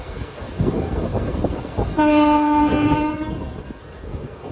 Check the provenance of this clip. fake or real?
fake